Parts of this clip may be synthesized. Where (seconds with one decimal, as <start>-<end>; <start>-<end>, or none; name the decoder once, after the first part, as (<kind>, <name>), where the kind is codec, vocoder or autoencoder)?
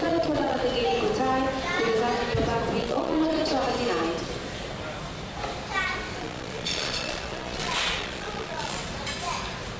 0.0-0.6 (vocoder, Vocos); 2.8-3.4; 6.2-8.8